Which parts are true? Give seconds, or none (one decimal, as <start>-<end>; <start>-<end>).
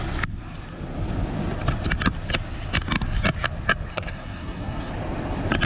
0.0-3.9; 4.9-5.6